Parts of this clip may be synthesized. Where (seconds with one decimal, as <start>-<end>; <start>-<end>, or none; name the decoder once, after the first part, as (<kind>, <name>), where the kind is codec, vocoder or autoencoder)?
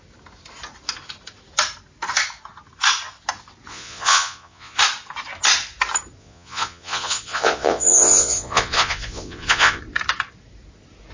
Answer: 3.7-4.8 (vocoder, Vocos); 6.2-9.8